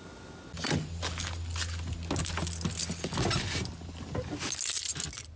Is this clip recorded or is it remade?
recorded